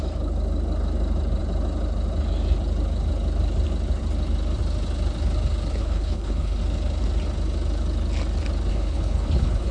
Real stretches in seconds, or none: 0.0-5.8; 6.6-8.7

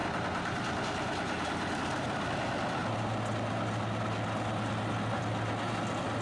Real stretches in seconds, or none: 0.0-6.2

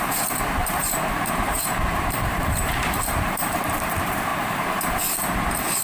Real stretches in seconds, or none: 0.0-0.6; 3.9-4.3; 5.0-5.8

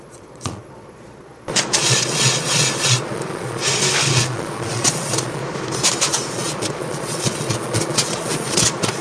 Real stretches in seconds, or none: 3.6-4.1; 5.4-6.3

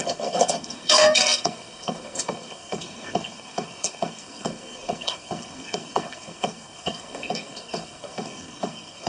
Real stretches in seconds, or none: none

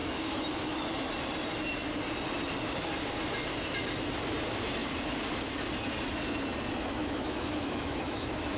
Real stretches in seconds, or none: 1.1-7.0